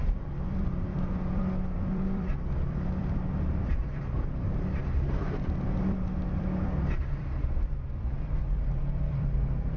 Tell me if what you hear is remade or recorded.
remade